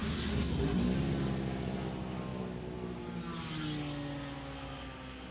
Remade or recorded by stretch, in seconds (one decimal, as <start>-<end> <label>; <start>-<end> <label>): 0.0-0.8 remade; 0.8-5.3 recorded